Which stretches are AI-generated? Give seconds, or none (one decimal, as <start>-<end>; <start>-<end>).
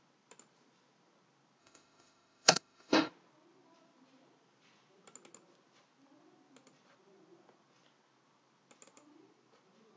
1.6-3.1